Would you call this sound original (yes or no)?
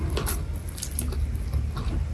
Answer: yes